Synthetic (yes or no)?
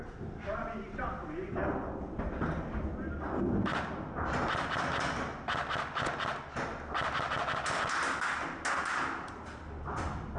no